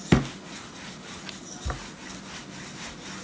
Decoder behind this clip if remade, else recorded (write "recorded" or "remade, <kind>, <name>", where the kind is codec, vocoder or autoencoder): recorded